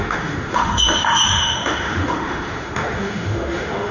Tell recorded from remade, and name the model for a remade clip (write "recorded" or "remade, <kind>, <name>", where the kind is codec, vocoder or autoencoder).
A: remade, autoencoder, DAC-VAE